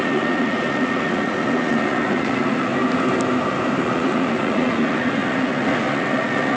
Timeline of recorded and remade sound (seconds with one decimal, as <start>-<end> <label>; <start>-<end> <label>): 0.0-2.7 remade; 2.7-3.8 recorded; 3.8-6.6 remade